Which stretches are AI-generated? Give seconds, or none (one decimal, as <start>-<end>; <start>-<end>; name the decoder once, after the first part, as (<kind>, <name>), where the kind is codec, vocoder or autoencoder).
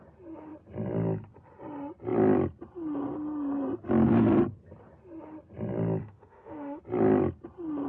6.0-6.8 (autoencoder, DAC-VAE)